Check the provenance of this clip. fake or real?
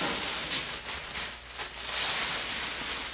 real